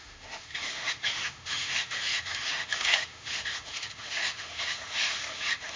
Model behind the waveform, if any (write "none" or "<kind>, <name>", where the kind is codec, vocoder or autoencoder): autoencoder, DAC-VAE